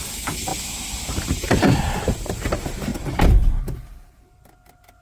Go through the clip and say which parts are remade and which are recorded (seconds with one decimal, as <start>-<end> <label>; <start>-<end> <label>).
0.0-2.9 recorded; 2.9-3.6 remade; 3.6-5.0 recorded